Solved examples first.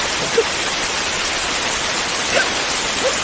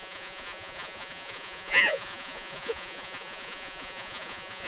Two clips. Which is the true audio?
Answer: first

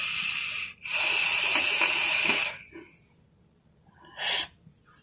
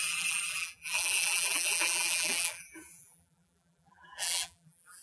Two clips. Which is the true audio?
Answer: first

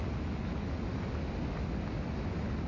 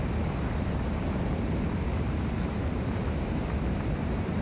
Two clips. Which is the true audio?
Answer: first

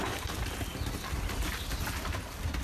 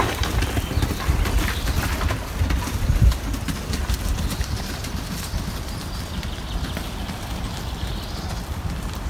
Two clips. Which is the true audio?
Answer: first